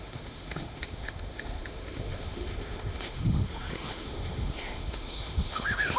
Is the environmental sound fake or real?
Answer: fake